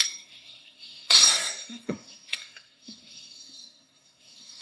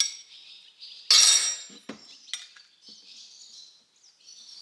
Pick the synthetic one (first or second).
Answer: first